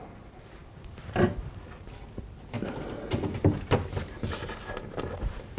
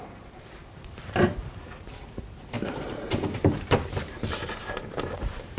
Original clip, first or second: first